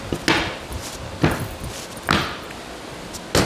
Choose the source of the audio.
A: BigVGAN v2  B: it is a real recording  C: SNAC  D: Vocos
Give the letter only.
B